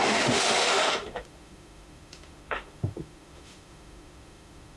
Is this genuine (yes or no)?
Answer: no